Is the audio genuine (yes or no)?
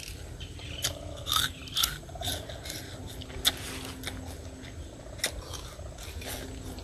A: yes